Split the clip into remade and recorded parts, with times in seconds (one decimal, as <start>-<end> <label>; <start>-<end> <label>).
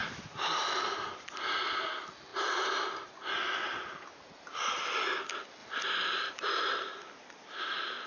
0.0-8.1 recorded